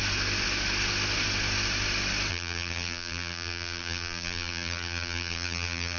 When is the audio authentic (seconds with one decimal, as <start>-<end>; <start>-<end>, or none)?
0.0-2.3